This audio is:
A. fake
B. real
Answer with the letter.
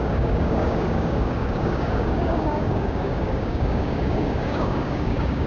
A